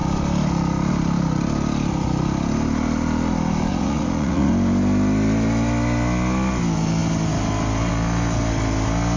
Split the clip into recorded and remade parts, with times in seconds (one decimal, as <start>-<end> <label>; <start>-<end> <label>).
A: 0.0-3.7 recorded; 3.7-4.5 remade; 4.5-9.2 recorded